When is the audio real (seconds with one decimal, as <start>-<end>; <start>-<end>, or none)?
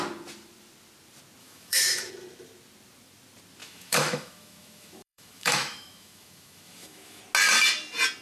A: 0.0-1.4; 2.1-3.6; 7.2-8.2